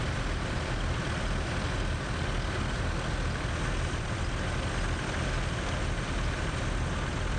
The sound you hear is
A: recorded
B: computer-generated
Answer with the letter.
A